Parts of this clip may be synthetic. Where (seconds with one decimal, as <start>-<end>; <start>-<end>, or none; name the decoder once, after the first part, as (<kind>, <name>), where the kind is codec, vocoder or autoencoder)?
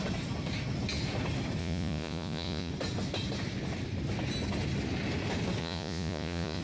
1.6-2.7 (vocoder, Vocos); 5.6-6.6